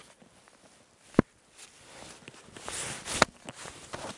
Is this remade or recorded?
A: recorded